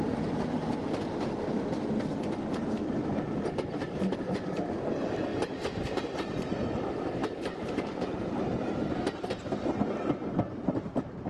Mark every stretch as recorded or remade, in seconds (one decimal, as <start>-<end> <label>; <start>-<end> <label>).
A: 0.0-5.3 recorded; 5.3-6.8 remade; 6.8-7.2 recorded; 7.2-10.8 remade; 10.8-11.3 recorded